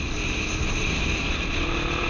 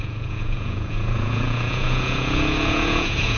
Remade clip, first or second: second